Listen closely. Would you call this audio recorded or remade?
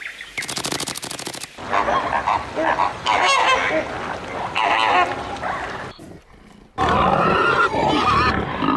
recorded